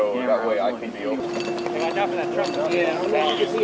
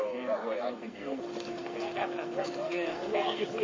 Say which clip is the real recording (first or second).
first